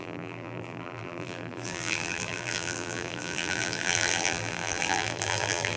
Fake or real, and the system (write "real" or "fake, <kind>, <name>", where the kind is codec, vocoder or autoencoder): fake, vocoder, BigVGAN v2